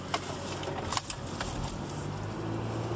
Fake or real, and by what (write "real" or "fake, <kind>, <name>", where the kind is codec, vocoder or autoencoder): real